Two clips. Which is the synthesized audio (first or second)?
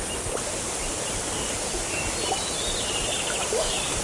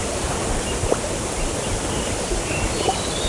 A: second